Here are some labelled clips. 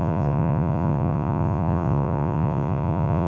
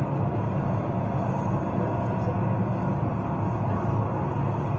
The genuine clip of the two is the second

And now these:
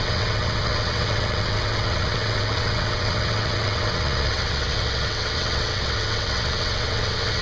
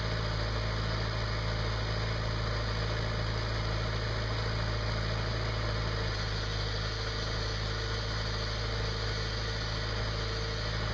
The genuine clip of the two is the second